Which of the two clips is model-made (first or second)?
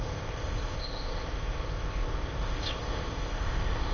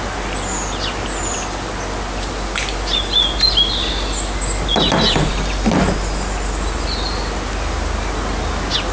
first